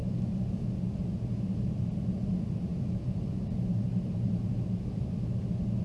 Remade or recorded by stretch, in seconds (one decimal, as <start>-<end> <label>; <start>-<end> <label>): 0.0-0.6 remade; 0.6-2.7 recorded; 2.7-5.2 remade; 5.2-5.8 recorded